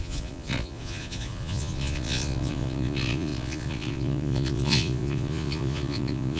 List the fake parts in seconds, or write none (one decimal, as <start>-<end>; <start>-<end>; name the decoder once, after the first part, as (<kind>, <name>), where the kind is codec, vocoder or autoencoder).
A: 0.0-6.4 (vocoder, Vocos)